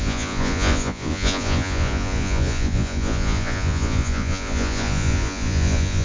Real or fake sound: fake